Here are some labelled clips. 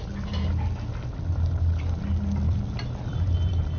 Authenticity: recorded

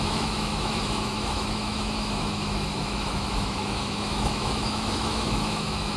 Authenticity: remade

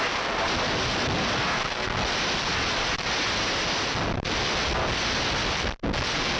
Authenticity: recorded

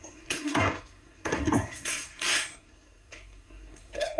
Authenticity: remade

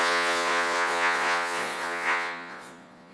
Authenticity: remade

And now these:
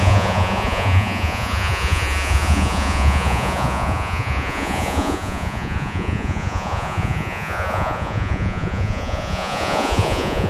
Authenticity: remade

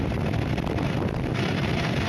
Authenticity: recorded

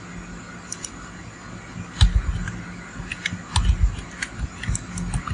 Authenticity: recorded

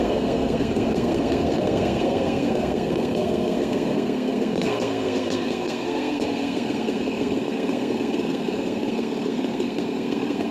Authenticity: remade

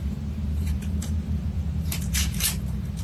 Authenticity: remade